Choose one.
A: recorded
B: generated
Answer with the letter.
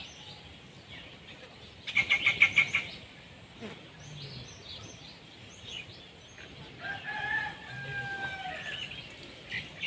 A